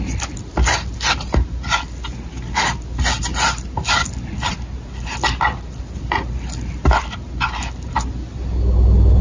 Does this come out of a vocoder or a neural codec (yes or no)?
no